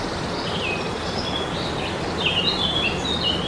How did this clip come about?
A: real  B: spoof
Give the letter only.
A